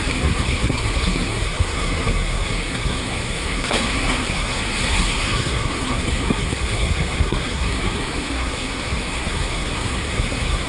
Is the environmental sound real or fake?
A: fake